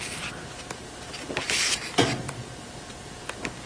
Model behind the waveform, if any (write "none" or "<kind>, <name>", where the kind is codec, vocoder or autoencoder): none